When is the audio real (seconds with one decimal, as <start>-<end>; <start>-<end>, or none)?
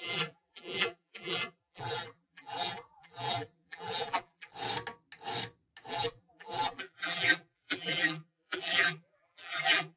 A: 4.5-5.9